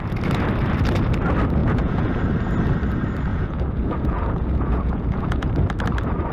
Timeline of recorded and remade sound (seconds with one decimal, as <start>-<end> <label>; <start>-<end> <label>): 0.0-1.6 recorded; 1.6-2.2 remade; 2.2-3.3 recorded; 3.3-5.5 remade; 5.5-6.3 recorded